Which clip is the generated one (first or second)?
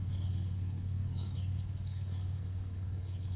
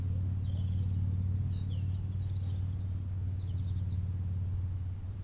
first